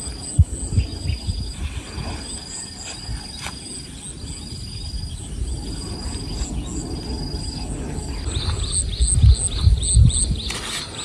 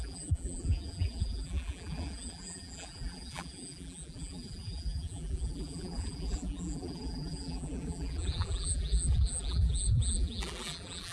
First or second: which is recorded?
first